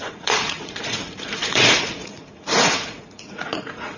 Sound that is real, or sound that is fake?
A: fake